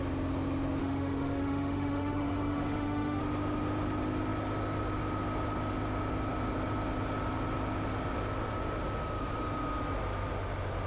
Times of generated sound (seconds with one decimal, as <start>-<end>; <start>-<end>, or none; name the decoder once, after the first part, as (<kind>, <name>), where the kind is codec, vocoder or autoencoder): 0.8-3.2 (autoencoder, DAC-VAE)